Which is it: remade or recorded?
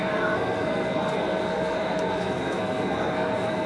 remade